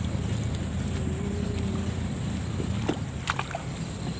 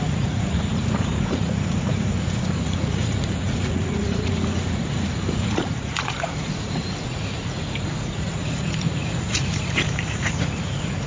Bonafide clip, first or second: first